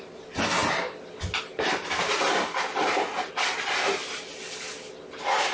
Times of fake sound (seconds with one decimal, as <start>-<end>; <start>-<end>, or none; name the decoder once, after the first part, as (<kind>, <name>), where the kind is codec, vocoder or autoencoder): none